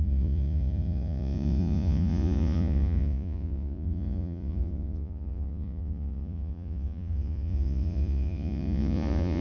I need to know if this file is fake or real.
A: fake